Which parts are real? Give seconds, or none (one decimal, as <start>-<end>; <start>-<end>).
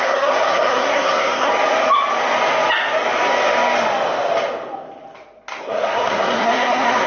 1.5-5.6